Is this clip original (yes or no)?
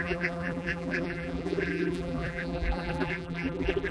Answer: no